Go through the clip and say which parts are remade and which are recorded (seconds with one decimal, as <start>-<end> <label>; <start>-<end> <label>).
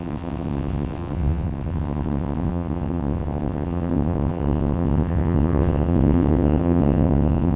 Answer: 0.0-7.6 remade